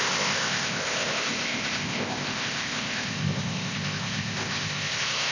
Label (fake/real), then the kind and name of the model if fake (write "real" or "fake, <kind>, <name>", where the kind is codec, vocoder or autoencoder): fake, codec, ZipCodec